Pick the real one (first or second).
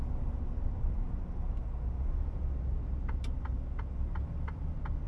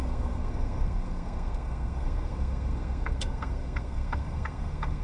first